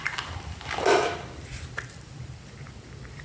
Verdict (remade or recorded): recorded